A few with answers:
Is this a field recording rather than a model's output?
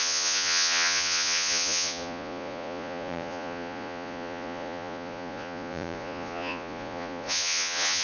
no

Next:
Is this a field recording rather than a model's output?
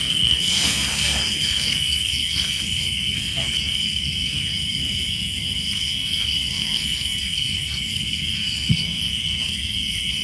no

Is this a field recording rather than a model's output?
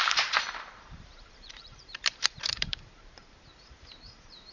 no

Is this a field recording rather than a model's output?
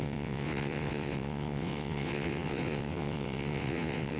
no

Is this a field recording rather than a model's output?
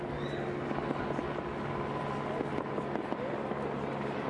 yes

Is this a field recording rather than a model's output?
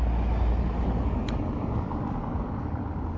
yes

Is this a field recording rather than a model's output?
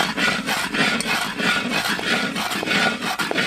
yes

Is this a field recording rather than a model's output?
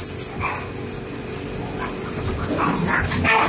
yes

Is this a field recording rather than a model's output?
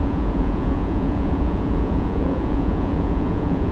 no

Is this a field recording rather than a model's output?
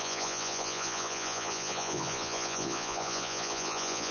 no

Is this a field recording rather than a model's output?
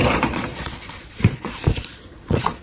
no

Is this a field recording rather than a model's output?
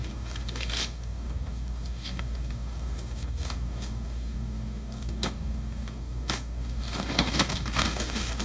no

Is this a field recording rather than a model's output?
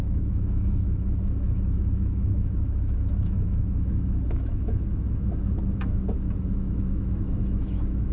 no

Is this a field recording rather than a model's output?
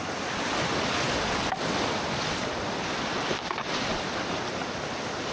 no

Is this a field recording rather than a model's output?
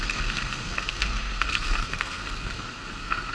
no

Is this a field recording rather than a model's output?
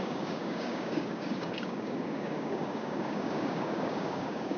no